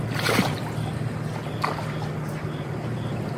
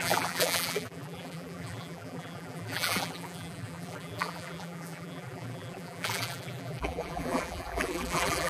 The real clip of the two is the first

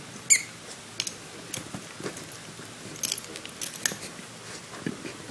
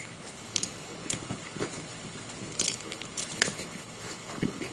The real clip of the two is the first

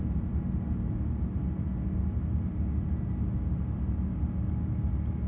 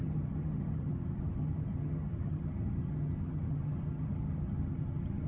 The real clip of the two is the first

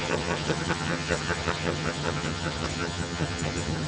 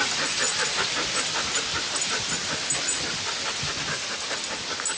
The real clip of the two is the second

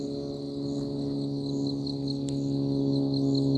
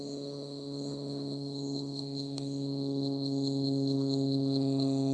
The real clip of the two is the first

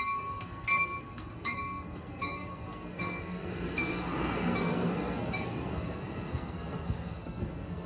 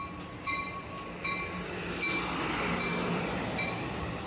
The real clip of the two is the second